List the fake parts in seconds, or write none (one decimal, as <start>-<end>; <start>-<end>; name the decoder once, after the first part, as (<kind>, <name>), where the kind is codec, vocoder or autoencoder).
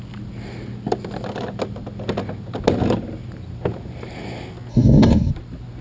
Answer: 4.7-5.3 (codec, DAC)